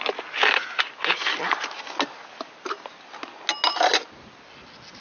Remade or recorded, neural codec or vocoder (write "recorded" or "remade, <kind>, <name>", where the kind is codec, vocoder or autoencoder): recorded